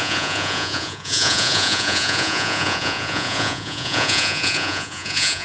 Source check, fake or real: fake